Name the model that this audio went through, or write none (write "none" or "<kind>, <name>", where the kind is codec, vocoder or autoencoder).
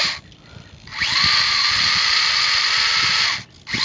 none